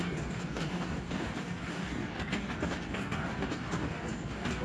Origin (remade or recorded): remade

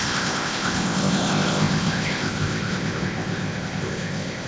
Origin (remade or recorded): remade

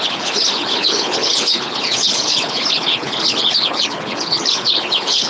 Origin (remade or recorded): remade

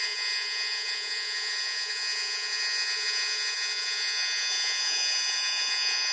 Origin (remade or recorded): remade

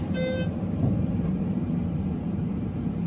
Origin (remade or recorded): remade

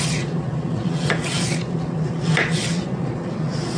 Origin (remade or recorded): remade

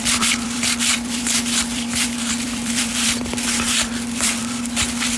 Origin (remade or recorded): remade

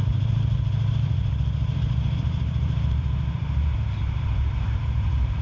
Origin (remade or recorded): remade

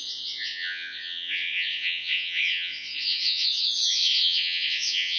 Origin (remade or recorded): remade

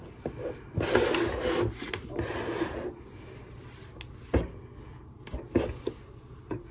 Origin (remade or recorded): recorded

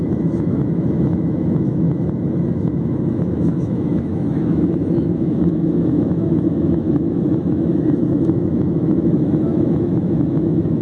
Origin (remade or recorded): remade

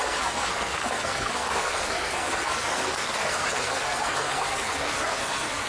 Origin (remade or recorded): remade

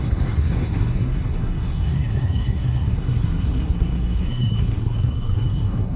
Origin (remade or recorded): remade